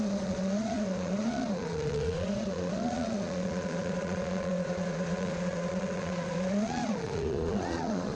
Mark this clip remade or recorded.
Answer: remade